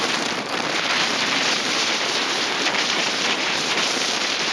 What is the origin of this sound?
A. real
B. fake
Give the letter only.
B